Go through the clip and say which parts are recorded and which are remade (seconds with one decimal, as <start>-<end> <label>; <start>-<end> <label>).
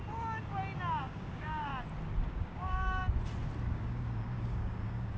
0.0-1.0 recorded; 1.0-1.7 remade; 1.7-2.3 recorded; 2.3-3.0 remade; 3.0-3.7 recorded; 3.7-5.2 remade